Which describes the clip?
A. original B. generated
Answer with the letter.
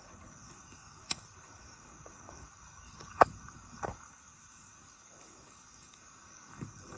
B